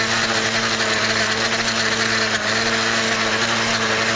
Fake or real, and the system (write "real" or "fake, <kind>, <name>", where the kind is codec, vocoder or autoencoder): real